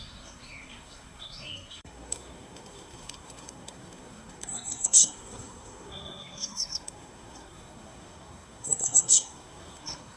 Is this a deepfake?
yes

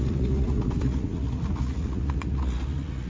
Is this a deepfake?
yes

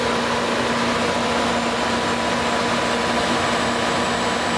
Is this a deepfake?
no